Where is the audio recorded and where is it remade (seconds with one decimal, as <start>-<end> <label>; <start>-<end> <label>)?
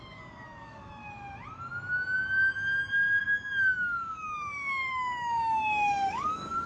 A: 0.0-1.0 remade; 1.0-3.2 recorded; 3.2-6.7 remade